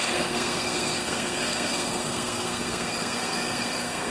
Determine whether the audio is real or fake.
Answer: fake